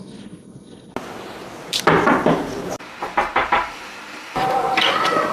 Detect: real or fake real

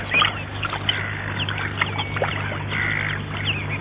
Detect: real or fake real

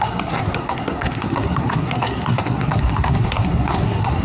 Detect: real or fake fake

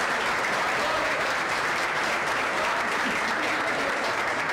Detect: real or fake fake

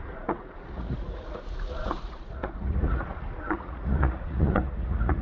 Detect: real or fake fake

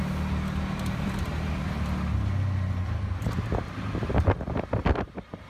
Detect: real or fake real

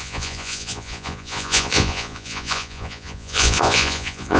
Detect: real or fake fake